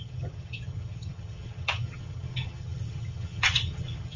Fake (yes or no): yes